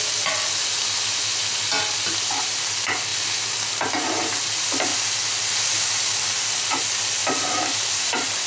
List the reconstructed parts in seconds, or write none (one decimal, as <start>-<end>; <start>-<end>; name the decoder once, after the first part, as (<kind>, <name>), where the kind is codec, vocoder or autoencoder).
7.2-8.5 (vocoder, BigVGAN v2)

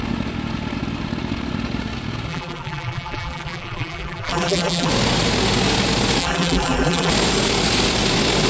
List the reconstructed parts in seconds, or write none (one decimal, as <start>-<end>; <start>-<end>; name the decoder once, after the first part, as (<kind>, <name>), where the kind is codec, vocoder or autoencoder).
2.3-4.9 (vocoder, BigVGAN v2); 6.2-7.1

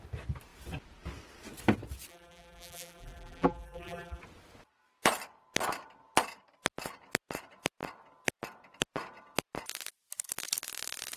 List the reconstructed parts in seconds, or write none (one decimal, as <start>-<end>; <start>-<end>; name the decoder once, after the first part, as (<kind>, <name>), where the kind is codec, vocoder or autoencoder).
2.1-4.2 (vocoder, BigVGAN v2)

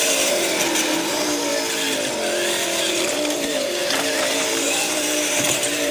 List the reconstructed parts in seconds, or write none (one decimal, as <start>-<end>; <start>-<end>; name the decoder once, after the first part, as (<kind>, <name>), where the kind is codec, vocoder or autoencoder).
0.0-1.5 (vocoder, BigVGAN v2); 2.8-5.9

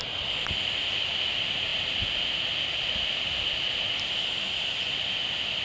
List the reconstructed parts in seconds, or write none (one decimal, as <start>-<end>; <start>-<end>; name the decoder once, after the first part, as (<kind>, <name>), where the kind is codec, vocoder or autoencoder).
none

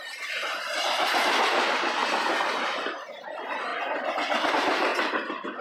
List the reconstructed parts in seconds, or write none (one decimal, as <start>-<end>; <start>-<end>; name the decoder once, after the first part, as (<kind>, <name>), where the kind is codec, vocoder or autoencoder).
0.0-0.4 (vocoder, BigVGAN v2); 1.3-2.0; 2.6-3.7; 4.5-4.9